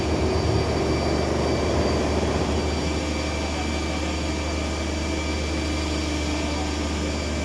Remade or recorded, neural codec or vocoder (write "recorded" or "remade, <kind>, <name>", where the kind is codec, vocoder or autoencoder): recorded